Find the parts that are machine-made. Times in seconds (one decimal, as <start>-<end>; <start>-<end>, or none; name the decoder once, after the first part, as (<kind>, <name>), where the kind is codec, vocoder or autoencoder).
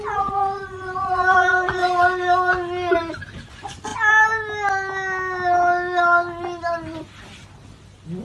0.0-1.8 (vocoder, Vocos); 3.5-3.9